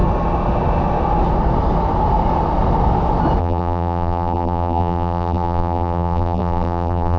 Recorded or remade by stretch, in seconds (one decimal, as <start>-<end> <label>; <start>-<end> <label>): 0.0-3.4 recorded; 3.4-7.2 remade